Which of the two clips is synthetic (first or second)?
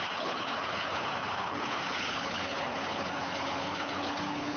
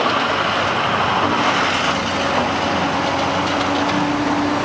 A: first